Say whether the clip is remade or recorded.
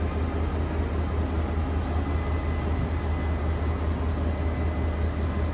recorded